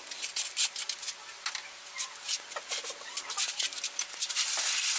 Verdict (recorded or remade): recorded